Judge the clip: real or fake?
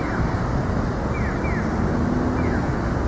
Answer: real